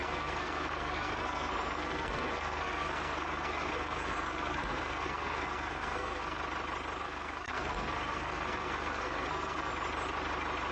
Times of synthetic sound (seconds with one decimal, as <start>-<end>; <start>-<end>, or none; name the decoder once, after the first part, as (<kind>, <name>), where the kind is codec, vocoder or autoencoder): 0.0-6.4 (codec, SNAC); 7.0-9.7